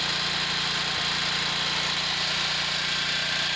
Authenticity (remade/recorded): recorded